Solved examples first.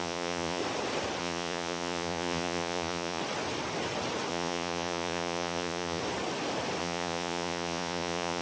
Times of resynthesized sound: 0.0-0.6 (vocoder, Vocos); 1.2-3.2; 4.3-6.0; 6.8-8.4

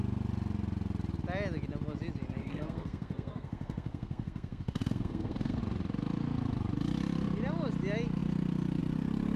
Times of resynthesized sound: 2.4-5.6 (codec, SNAC)